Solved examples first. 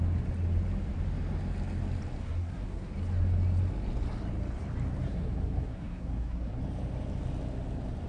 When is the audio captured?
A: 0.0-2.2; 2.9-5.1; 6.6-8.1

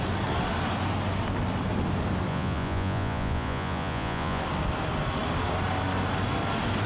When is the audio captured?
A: 0.0-2.3; 4.4-6.9

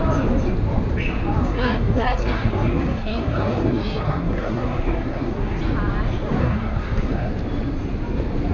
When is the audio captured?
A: 0.0-1.4; 5.6-6.4; 7.3-8.5

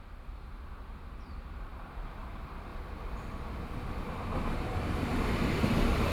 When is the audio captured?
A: 2.7-4.1